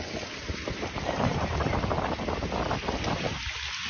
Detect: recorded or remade recorded